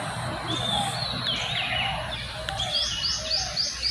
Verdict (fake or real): real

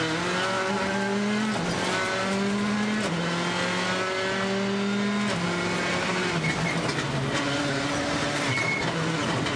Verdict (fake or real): real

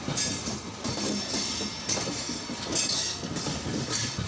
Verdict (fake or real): real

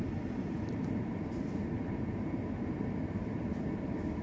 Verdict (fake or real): fake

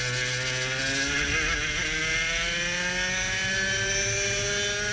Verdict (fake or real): real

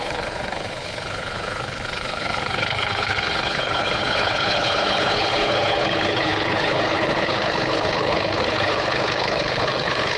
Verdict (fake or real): fake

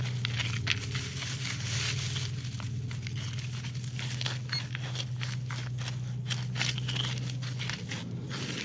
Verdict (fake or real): real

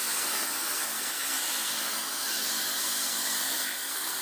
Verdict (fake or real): fake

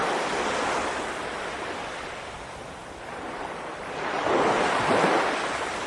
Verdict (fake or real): real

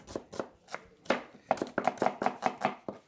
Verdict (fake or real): real